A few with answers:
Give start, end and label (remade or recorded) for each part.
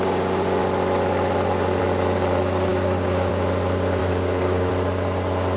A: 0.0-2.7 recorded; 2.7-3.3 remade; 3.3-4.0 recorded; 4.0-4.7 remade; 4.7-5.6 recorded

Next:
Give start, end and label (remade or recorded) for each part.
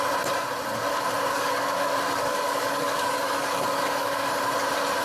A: 0.0-1.3 recorded; 1.3-4.3 remade; 4.3-5.0 recorded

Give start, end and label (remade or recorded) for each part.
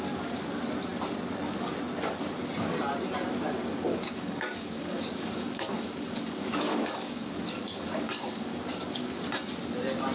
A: 0.0-3.9 recorded; 3.9-9.2 remade; 9.2-10.1 recorded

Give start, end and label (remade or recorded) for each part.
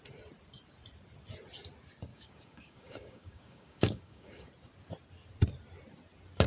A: 0.0-2.1 recorded; 2.1-4.5 remade; 4.5-6.5 recorded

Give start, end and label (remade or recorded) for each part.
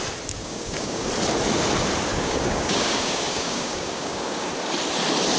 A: 0.0-0.4 recorded; 0.4-1.1 remade; 1.1-2.1 recorded; 2.1-4.5 remade; 4.5-5.4 recorded